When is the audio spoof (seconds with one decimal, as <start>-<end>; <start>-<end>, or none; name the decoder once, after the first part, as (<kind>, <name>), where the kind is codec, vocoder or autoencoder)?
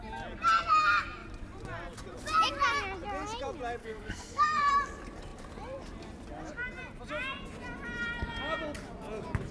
3.8-4.7 (codec, SNAC)